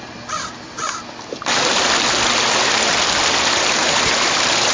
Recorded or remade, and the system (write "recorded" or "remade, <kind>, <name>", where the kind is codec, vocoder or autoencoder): remade, vocoder, BigVGAN v2